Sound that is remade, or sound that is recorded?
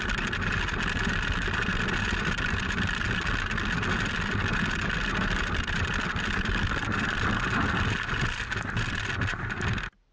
recorded